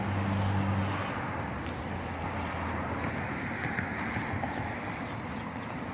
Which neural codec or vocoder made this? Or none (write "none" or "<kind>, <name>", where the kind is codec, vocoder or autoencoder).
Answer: none